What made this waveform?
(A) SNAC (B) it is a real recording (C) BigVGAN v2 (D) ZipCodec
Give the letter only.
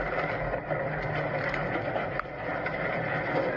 B